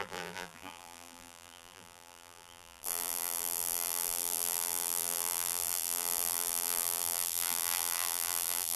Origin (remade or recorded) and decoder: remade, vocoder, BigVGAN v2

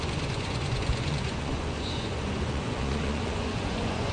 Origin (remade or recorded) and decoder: remade, vocoder, Vocos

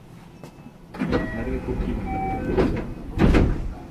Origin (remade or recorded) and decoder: recorded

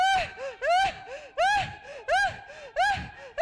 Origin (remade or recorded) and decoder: recorded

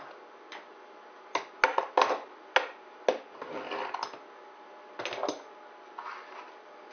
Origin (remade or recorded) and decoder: recorded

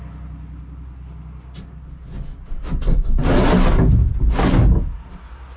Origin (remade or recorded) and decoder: recorded